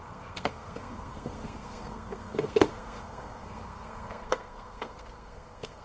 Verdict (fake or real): fake